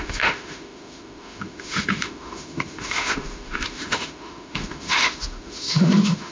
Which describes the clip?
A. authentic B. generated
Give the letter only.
B